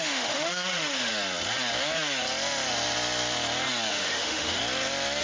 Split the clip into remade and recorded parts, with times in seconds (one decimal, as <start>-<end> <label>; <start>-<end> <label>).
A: 0.0-1.1 remade; 1.1-3.9 recorded; 3.9-4.6 remade; 4.6-5.2 recorded

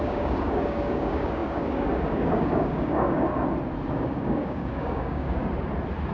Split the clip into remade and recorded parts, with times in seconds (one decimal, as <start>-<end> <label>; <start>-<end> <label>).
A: 0.0-3.3 remade; 3.3-3.9 recorded; 3.9-5.4 remade; 5.4-6.1 recorded